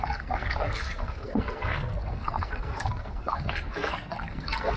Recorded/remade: remade